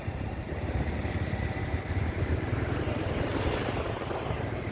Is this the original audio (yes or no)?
no